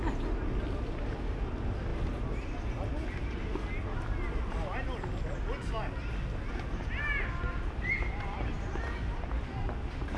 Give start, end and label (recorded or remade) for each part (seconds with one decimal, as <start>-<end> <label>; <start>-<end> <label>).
0.0-10.2 recorded